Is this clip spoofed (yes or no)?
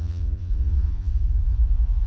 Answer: yes